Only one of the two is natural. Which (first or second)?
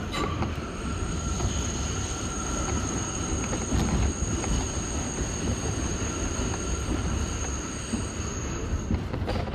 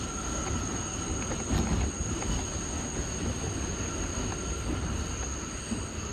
second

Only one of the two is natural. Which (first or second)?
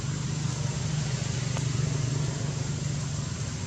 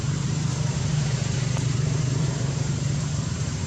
first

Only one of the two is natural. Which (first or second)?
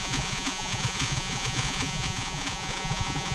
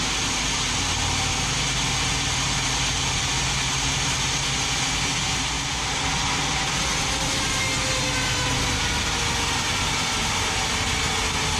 second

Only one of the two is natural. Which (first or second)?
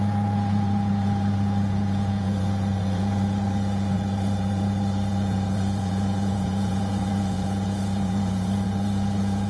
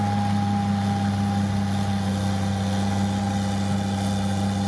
second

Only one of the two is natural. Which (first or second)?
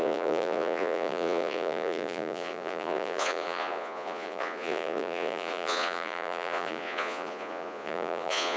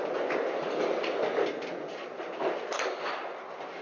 second